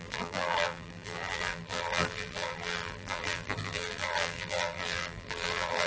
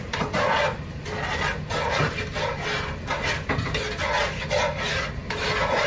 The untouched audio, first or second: second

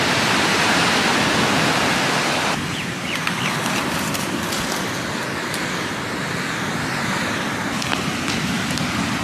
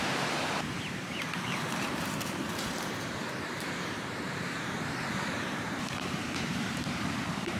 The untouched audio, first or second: first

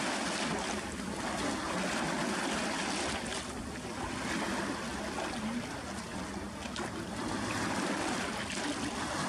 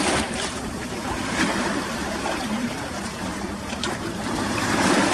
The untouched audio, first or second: first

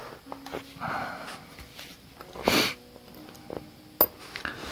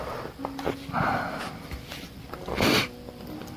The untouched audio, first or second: first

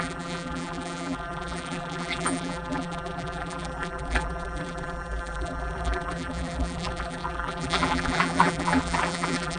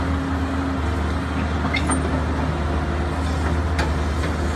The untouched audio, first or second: second